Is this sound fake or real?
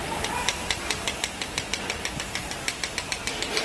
real